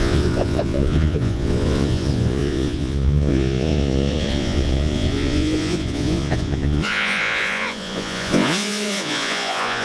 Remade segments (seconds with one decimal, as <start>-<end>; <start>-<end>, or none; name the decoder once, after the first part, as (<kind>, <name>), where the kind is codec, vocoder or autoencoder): 0.0-9.8 (vocoder, Vocos)